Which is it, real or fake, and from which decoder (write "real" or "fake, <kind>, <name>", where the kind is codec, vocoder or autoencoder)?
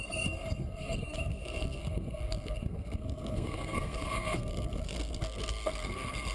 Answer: fake, codec, SNAC